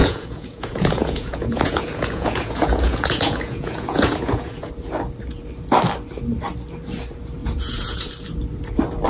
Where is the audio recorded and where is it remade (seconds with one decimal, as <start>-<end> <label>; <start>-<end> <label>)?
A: 0.0-4.7 remade; 4.7-7.4 recorded; 7.4-8.1 remade; 8.1-9.1 recorded